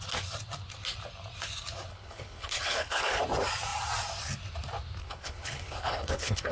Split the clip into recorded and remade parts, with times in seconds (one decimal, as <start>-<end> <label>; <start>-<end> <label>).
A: 0.0-1.9 recorded; 1.9-3.2 remade; 3.2-5.0 recorded; 5.0-6.5 remade